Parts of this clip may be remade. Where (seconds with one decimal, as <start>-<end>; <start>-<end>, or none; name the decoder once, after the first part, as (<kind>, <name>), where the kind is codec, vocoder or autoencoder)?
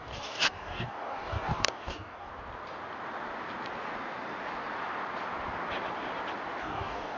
0.0-2.3 (codec, DAC); 6.6-7.2